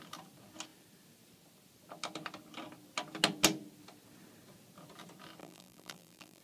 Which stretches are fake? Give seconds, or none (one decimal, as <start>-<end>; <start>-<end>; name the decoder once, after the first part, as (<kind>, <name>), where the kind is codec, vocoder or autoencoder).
5.4-6.4 (vocoder, BigVGAN v2)